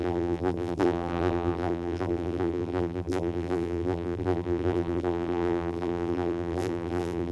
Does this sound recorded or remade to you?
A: remade